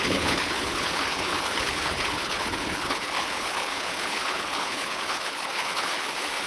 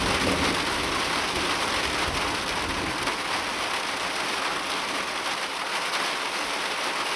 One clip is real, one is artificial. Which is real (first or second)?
second